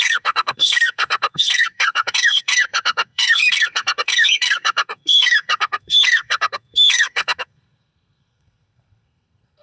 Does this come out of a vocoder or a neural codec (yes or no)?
yes